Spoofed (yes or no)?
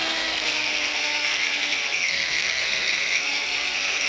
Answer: yes